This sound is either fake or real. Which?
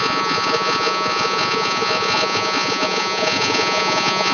fake